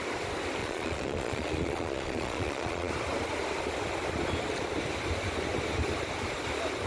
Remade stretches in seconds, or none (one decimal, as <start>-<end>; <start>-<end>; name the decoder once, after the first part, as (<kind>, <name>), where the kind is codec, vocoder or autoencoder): 0.6-2.9 (vocoder, Vocos)